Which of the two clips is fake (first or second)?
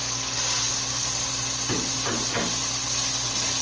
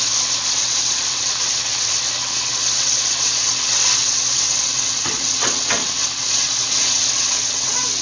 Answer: second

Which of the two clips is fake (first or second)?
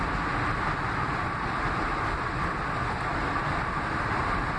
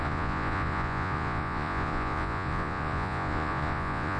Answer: second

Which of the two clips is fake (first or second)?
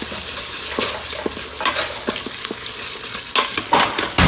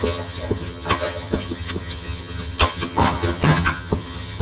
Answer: second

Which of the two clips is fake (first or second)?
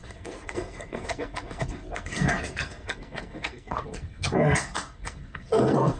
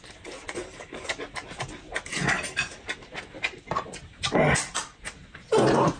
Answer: first